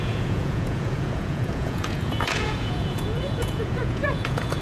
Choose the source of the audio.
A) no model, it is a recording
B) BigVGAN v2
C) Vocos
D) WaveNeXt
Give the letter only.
C